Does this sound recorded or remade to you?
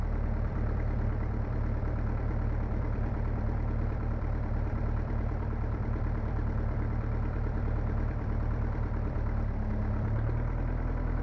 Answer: remade